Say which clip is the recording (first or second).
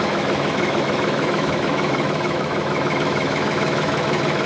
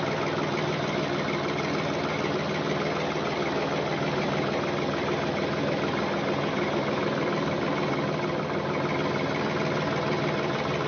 second